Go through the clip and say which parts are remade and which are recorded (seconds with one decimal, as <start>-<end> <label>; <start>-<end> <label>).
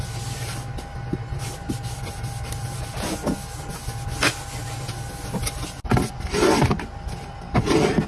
0.0-8.1 recorded